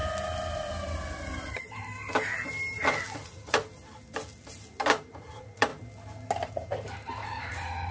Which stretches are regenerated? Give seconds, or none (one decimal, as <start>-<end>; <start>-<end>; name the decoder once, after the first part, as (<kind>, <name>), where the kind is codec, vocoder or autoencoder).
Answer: 3.2-3.6 (vocoder, Vocos); 5.1-5.7; 7.4-7.9